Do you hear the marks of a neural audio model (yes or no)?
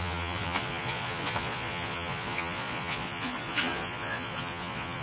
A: yes